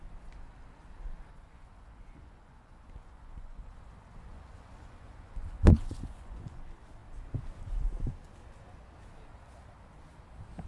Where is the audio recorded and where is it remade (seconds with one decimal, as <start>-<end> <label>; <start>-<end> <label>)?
0.0-1.3 recorded; 1.3-3.7 remade; 3.7-4.3 recorded; 4.3-6.6 remade; 6.6-10.7 recorded